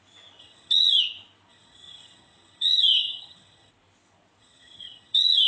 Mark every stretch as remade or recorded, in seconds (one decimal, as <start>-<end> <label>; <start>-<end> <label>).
0.0-0.4 recorded; 0.4-1.0 remade; 1.0-1.5 recorded; 1.5-3.7 remade; 3.7-4.4 recorded; 4.4-5.5 remade